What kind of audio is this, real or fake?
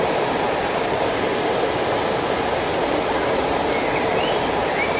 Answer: real